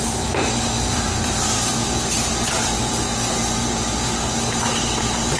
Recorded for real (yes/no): no